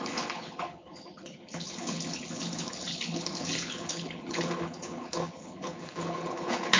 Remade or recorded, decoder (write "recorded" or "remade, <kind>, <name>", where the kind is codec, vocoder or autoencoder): remade, codec, HILCodec